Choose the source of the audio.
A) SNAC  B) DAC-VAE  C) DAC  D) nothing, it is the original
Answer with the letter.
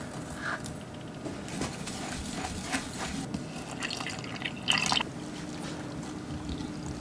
D